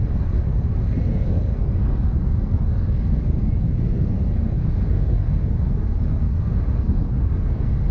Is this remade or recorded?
remade